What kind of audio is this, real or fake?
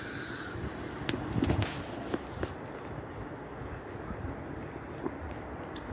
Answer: real